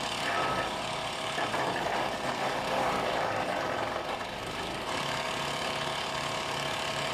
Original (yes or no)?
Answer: no